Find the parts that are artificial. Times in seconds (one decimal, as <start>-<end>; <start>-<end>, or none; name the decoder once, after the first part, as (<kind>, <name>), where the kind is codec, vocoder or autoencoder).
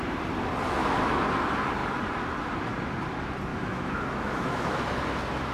0.8-1.3 (autoencoder, DAC-VAE); 3.5-5.0